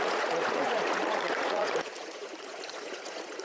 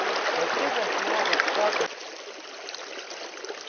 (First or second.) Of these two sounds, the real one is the second